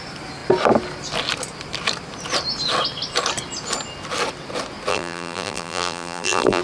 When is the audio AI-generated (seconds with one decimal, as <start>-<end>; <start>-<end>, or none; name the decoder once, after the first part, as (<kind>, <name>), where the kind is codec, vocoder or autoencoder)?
4.9-6.6 (vocoder, BigVGAN v2)